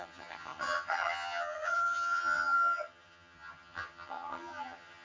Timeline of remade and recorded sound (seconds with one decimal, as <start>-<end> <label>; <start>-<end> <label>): 0.0-5.0 remade